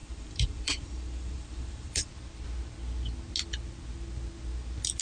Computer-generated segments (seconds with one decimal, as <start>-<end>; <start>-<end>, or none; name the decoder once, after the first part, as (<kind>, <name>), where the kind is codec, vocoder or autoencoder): 0.0-2.1 (vocoder, BigVGAN v2)